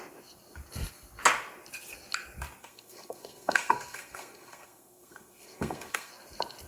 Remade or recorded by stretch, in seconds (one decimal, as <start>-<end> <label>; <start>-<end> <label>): 0.0-2.6 recorded; 2.6-6.1 remade; 6.1-6.7 recorded